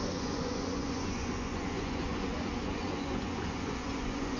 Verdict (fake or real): fake